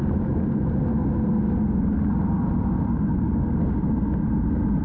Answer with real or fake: real